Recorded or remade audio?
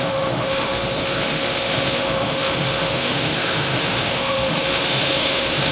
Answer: remade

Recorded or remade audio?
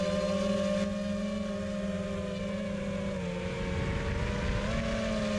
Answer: recorded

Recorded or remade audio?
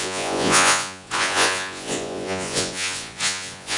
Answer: remade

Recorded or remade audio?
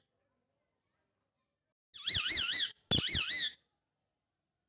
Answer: recorded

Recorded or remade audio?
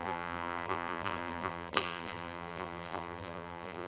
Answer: remade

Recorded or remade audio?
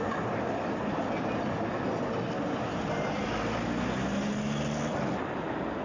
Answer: recorded